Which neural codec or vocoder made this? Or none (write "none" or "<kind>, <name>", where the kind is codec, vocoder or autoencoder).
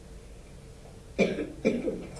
none